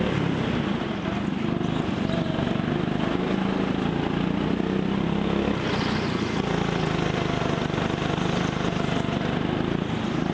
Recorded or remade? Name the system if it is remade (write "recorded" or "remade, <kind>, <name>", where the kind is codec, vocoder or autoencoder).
recorded